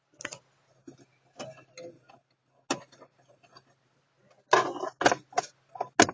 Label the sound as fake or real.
real